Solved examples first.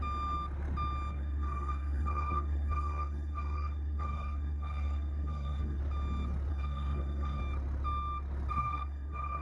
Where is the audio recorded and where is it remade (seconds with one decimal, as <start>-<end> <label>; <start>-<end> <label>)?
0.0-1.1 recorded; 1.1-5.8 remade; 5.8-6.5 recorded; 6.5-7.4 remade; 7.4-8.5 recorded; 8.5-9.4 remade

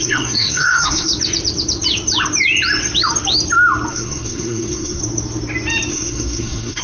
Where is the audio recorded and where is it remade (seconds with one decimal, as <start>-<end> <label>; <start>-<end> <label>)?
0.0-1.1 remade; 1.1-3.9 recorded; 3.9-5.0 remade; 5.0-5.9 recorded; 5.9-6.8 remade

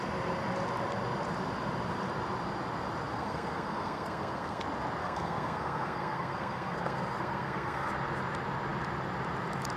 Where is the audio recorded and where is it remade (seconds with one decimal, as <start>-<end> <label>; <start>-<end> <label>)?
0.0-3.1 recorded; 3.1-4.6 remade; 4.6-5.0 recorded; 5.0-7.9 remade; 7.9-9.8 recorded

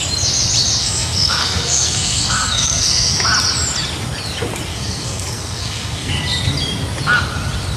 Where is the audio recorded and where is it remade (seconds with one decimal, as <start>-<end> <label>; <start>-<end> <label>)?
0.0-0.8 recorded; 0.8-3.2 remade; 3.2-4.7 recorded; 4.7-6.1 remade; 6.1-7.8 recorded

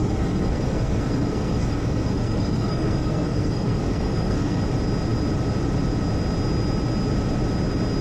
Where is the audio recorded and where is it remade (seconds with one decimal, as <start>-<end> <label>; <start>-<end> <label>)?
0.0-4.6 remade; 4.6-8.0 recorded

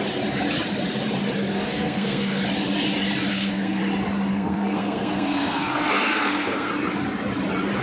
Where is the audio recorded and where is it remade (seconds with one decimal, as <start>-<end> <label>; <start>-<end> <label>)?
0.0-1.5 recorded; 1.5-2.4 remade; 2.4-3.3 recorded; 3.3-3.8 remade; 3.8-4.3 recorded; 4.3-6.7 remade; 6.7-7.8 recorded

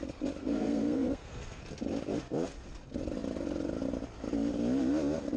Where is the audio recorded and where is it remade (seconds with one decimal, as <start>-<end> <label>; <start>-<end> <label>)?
0.0-0.4 recorded; 0.4-1.6 remade; 1.6-5.4 recorded

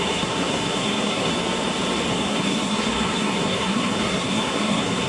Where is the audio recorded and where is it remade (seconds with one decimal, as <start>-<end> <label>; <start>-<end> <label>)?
0.0-1.3 remade; 1.3-2.1 recorded; 2.1-5.1 remade